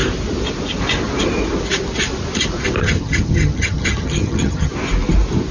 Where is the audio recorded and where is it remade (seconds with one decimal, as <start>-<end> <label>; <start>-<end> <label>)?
0.0-2.8 recorded; 2.8-4.7 remade; 4.7-5.5 recorded